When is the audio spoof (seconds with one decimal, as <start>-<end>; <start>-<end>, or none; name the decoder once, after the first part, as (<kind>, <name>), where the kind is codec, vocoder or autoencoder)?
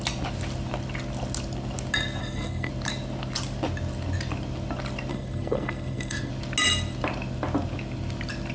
2.2-2.7 (codec, SNAC); 5.1-6.3